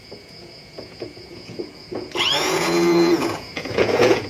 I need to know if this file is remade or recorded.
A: remade